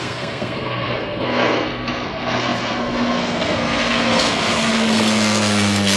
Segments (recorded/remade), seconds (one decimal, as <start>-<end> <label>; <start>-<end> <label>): 0.0-6.0 remade